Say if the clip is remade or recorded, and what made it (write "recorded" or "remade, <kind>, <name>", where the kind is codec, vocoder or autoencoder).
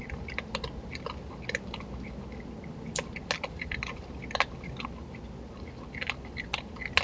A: recorded